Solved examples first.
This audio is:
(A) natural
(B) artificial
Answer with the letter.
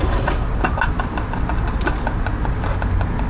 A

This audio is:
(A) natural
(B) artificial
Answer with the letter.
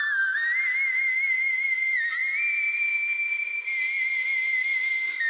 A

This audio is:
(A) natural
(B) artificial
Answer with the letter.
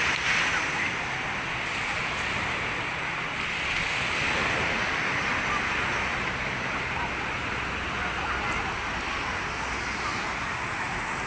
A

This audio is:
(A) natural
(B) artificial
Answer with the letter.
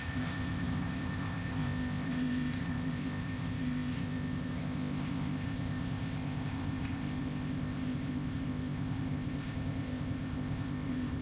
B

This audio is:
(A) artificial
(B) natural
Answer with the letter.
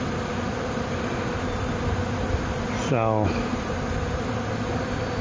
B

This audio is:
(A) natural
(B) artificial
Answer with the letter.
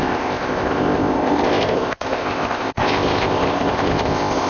B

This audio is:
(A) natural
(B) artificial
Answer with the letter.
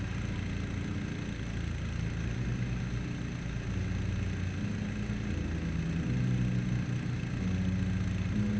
A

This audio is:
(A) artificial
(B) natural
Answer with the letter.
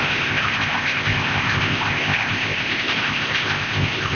A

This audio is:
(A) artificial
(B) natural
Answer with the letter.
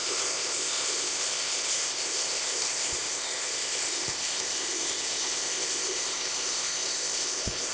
A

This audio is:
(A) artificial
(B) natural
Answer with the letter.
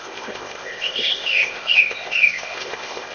A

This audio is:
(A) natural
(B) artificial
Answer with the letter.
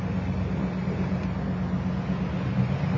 A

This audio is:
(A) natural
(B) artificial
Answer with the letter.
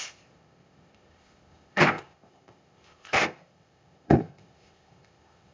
B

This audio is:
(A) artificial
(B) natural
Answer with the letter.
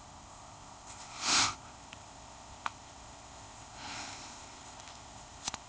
A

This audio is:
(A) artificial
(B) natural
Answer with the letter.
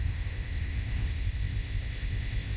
A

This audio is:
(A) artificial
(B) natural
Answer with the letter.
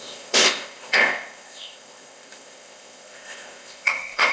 A